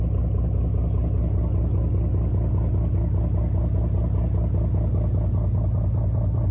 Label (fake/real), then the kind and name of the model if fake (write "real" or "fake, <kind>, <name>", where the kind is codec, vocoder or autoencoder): real